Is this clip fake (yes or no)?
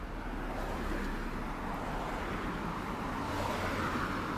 no